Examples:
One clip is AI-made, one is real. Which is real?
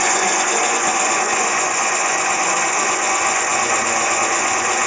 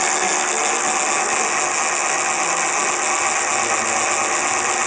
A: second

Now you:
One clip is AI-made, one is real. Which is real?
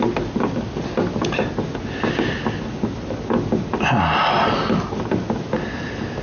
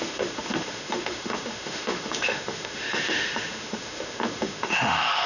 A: first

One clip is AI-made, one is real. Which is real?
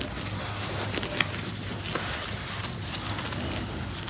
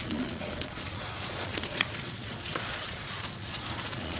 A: first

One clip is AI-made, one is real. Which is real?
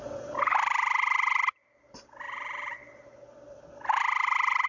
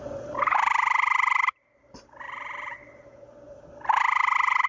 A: first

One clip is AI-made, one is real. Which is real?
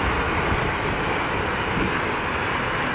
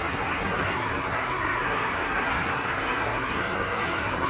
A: first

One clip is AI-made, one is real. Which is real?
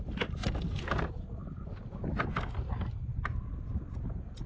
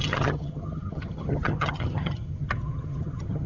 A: first